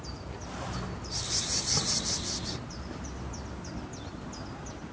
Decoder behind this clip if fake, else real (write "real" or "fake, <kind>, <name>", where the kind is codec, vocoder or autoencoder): real